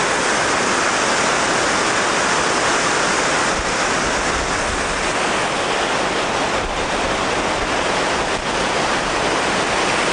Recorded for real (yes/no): yes